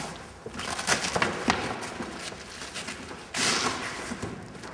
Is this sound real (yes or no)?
yes